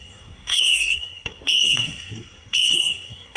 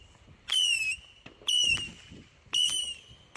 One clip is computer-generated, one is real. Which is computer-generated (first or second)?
first